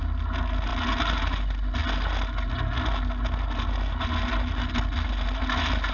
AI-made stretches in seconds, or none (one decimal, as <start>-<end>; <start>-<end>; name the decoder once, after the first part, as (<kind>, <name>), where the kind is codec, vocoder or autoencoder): none